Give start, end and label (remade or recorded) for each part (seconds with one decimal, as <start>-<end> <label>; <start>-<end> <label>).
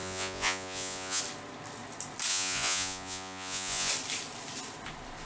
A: 0.0-1.2 remade; 1.2-2.3 recorded; 2.3-3.9 remade; 3.9-5.3 recorded